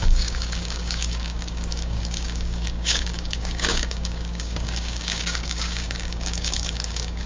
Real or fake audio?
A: fake